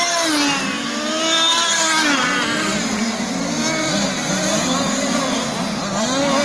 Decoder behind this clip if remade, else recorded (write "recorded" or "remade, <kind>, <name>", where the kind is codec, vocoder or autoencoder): recorded